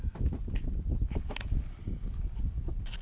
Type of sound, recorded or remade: remade